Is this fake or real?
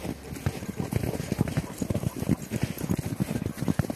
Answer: real